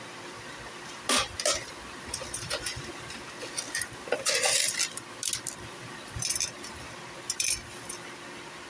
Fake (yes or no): no